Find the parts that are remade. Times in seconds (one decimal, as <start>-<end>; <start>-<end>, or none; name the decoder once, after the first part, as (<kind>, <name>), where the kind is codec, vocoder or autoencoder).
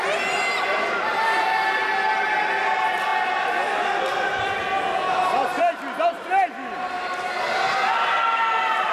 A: none